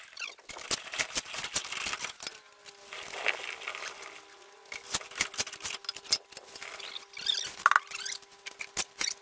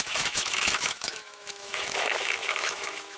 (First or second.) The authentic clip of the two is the first